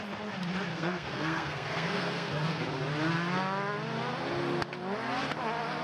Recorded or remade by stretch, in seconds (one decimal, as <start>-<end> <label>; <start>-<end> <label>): 0.0-0.7 recorded; 0.7-2.6 remade; 2.6-5.8 recorded